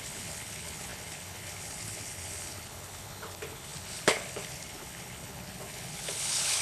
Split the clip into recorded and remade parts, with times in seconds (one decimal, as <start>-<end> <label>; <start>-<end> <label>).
0.0-6.6 remade